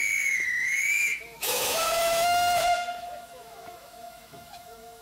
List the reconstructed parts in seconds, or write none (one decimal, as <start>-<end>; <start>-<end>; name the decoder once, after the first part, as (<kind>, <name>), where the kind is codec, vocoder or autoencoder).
0.0-5.0 (autoencoder, DAC-VAE)